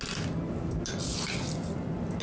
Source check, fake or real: real